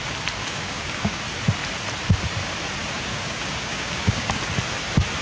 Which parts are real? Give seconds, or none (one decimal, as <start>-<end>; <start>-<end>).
0.0-0.4; 1.2-3.1; 4.4-5.2

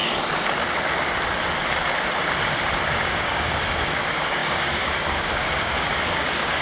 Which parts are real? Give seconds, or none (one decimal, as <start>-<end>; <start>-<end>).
0.0-3.0

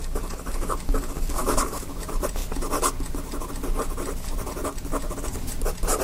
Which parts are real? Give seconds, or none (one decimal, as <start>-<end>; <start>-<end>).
2.0-6.0

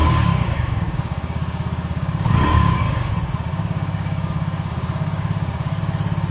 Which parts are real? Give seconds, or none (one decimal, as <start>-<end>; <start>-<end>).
3.1-3.5; 5.8-6.3

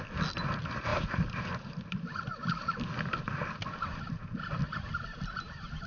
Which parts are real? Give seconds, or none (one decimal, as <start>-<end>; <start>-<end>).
0.0-5.9

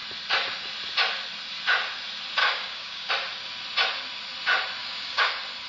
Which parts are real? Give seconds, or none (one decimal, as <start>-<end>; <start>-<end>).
0.0-2.4; 3.1-4.8; 5.3-5.7

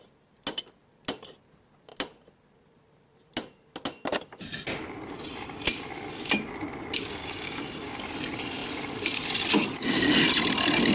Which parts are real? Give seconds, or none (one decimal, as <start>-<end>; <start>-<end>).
0.0-7.2; 8.0-10.9